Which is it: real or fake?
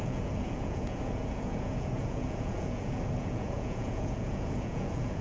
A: fake